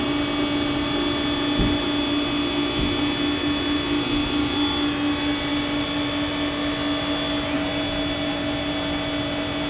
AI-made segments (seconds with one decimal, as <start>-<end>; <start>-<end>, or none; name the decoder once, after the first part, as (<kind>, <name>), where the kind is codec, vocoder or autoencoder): none